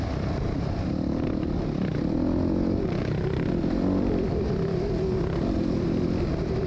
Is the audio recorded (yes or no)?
yes